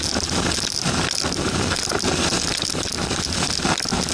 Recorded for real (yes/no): yes